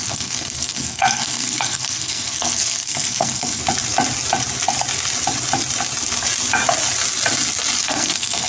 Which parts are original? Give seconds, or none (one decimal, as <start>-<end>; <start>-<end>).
3.6-7.8